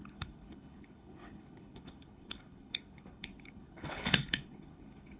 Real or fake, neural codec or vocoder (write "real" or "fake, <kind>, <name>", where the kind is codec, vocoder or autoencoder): fake, codec, HILCodec